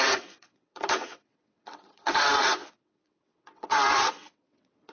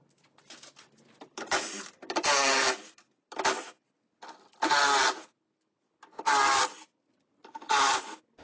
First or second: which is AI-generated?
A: first